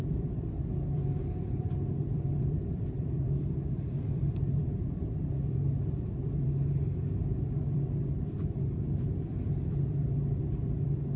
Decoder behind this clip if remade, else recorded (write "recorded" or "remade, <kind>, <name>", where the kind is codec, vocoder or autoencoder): remade, vocoder, BigVGAN v2